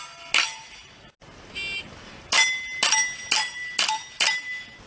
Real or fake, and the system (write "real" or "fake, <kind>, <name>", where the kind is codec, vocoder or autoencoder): real